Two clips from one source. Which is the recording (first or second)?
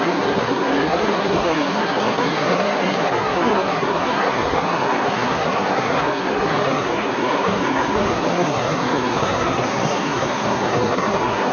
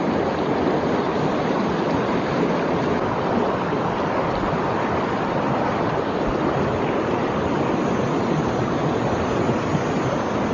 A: second